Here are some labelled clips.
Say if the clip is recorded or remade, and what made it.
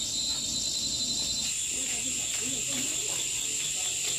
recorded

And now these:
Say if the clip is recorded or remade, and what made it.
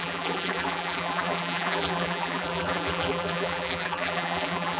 remade, vocoder, BigVGAN v2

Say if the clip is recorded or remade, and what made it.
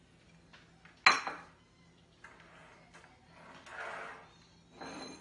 recorded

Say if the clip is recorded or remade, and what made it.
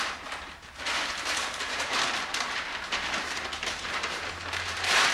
remade, vocoder, BigVGAN v2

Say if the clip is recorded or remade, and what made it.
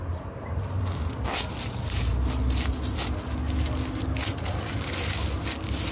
recorded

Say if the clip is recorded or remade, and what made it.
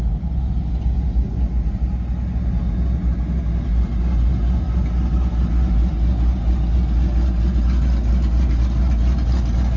recorded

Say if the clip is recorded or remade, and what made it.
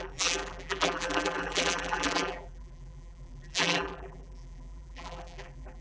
remade, vocoder, BigVGAN v2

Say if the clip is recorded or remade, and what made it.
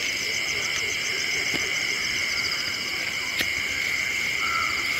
remade, vocoder, BigVGAN v2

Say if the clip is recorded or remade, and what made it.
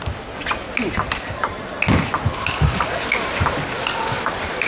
recorded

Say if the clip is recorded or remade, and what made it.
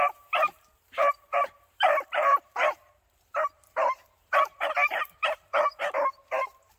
remade, vocoder, BigVGAN v2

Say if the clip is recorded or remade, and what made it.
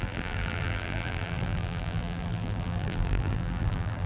remade, vocoder, BigVGAN v2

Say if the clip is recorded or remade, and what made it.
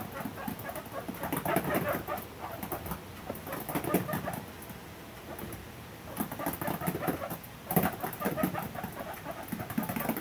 recorded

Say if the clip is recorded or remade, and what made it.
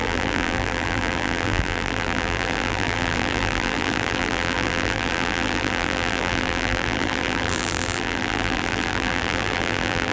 remade, vocoder, BigVGAN v2